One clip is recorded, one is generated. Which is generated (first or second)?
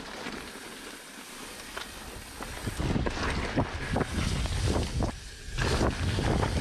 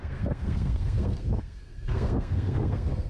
second